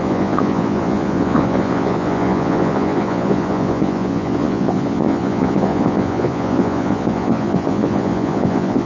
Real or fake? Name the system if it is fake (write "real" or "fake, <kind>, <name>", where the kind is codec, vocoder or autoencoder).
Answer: fake, vocoder, Vocos